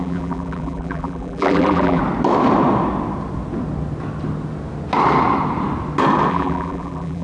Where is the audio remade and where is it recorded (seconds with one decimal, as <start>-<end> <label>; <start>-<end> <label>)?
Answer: 0.0-2.0 remade; 2.0-6.3 recorded; 6.3-7.2 remade